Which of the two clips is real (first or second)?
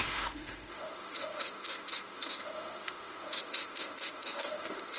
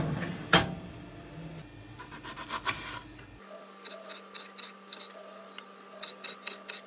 second